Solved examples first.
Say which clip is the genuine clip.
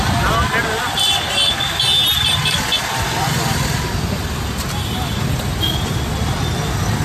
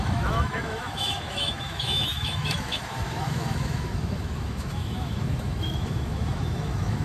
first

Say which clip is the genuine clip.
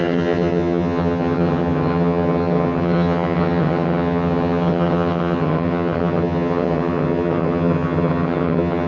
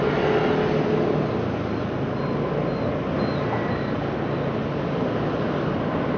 second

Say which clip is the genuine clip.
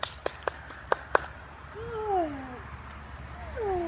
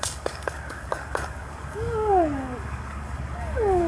first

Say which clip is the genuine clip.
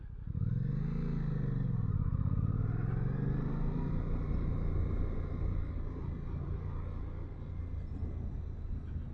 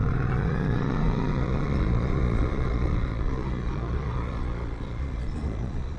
first